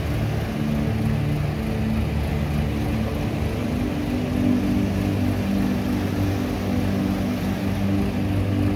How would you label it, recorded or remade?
recorded